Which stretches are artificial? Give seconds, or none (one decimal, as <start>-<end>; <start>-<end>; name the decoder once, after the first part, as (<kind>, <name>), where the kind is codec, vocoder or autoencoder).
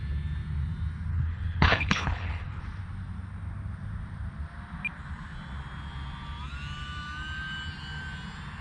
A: 1.1-2.6 (codec, HILCodec)